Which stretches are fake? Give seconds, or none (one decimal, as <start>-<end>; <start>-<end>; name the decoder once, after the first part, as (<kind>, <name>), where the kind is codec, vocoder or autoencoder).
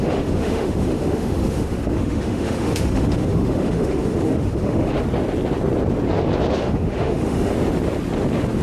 0.0-4.9 (autoencoder, DAC-VAE); 6.6-7.5